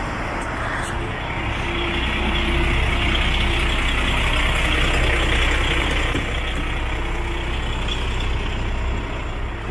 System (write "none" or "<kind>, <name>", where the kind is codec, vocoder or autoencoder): none